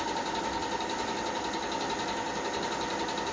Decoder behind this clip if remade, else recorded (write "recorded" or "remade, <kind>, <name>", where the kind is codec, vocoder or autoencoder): recorded